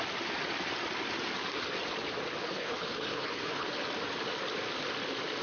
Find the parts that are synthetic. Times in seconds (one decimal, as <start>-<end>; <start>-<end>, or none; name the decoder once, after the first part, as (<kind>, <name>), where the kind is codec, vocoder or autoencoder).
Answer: 2.4-3.7 (codec, HILCodec)